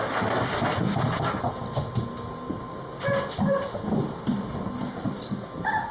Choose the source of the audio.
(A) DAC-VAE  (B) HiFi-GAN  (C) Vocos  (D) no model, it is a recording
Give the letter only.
D